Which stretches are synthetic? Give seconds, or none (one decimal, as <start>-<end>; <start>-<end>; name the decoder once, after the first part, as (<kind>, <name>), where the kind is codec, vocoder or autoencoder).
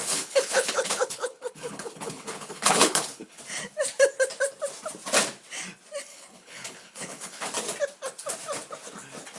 0.0-3.4 (codec, HILCodec); 6.1-7.4